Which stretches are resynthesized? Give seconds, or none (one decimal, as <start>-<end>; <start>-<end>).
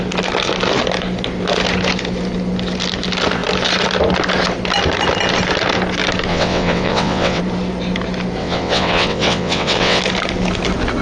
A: 6.3-7.4; 8.4-10.0